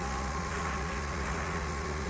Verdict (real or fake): fake